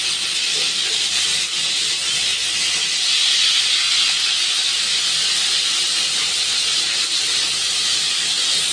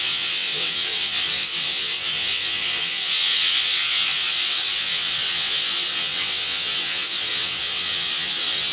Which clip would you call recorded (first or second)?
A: first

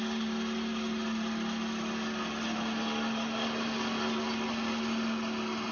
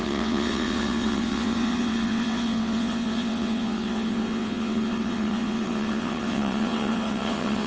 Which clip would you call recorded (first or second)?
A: first